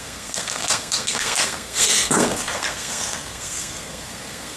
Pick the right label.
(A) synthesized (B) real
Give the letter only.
A